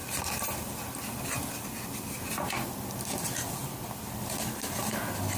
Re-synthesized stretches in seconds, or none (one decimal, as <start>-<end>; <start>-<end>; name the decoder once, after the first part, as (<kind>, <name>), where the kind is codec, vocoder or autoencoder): 0.0-2.3 (vocoder, BigVGAN v2)